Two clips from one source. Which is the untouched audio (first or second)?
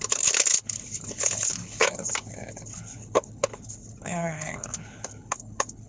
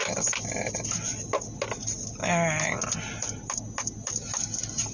second